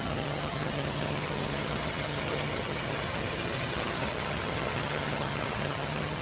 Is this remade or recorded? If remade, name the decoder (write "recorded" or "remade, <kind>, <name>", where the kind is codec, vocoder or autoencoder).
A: remade, vocoder, HiFi-GAN